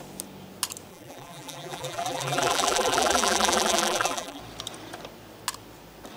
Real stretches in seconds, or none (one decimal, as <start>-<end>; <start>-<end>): 0.0-0.9; 4.4-6.2